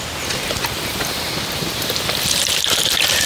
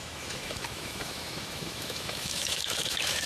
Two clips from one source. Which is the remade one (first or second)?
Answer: second